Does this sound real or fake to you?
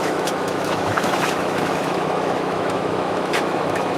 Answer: fake